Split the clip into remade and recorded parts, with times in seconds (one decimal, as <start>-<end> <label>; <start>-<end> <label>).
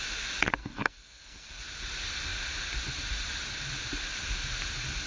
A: 0.0-0.6 recorded; 0.6-1.6 remade; 1.6-5.1 recorded